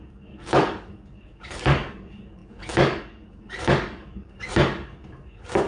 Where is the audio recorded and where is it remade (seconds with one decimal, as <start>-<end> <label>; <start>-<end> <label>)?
0.0-5.7 remade